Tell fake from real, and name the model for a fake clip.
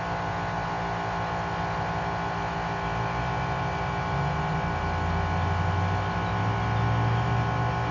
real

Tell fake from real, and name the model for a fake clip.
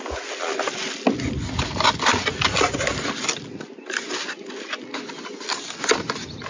real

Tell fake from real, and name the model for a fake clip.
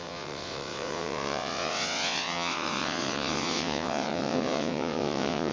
fake, vocoder, WaveNeXt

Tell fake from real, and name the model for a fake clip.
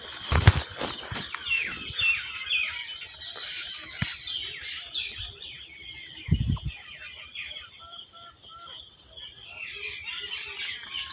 real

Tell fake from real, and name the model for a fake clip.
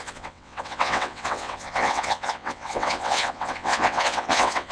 fake, vocoder, WaveNeXt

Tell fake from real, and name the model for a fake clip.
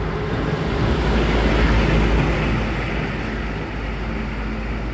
real